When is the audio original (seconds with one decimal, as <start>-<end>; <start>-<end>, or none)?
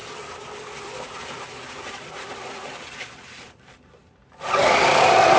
0.0-5.4